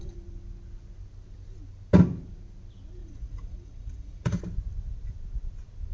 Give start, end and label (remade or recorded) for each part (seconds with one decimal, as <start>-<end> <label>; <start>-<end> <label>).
0.0-3.0 recorded; 3.0-4.4 remade; 4.4-5.9 recorded